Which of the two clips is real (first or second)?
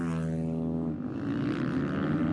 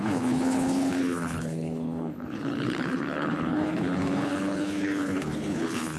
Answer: first